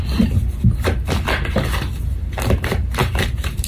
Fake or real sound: real